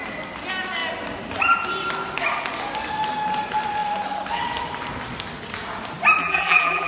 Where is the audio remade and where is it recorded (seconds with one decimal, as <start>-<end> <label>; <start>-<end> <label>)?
0.0-6.2 recorded; 6.2-6.9 remade